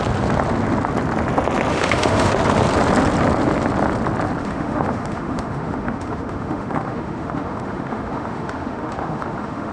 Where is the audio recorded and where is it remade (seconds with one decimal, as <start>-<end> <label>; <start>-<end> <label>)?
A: 0.0-1.7 recorded; 1.7-2.3 remade; 2.3-4.4 recorded; 4.4-9.7 remade